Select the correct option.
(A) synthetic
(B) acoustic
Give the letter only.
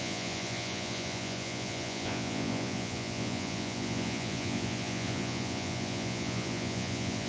A